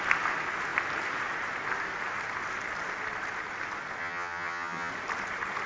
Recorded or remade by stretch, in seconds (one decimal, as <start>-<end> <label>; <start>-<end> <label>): 0.0-4.0 recorded; 4.0-4.9 remade; 4.9-5.7 recorded